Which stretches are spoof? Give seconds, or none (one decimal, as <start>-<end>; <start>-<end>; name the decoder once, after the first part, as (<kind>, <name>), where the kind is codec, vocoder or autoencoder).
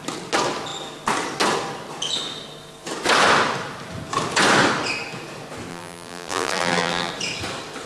5.7-7.1 (vocoder, BigVGAN v2)